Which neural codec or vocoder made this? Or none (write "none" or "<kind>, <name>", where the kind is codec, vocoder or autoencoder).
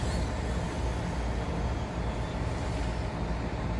none